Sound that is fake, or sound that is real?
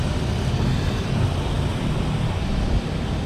real